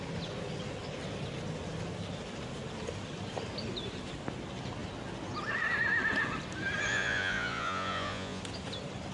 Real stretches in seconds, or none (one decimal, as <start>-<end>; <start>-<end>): 0.0-6.9; 8.4-9.1